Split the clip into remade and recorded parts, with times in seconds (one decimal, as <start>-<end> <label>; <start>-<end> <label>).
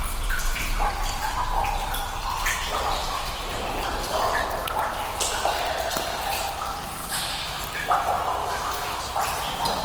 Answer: 0.0-3.0 recorded; 3.0-3.6 remade; 3.6-7.0 recorded; 7.0-7.6 remade; 7.6-8.4 recorded; 8.4-9.0 remade; 9.0-9.8 recorded